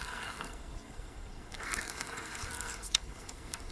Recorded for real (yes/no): no